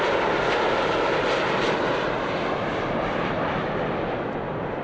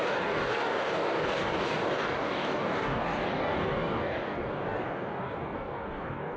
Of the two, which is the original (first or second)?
first